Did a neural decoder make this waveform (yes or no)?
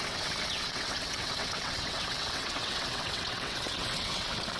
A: yes